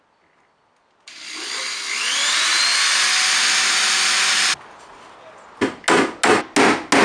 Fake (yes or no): no